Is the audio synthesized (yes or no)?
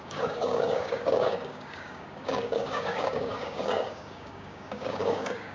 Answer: yes